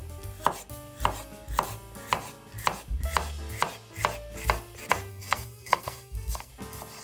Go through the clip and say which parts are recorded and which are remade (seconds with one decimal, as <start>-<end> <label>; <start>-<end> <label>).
0.0-5.1 recorded; 5.1-6.5 remade; 6.5-7.0 recorded